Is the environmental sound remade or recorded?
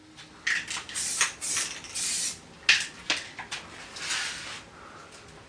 recorded